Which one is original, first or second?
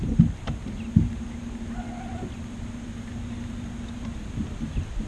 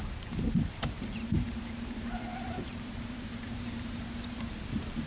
first